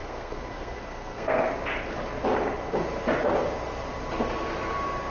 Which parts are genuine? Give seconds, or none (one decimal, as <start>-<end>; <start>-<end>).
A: 1.5-5.1